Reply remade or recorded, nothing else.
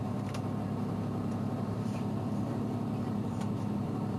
remade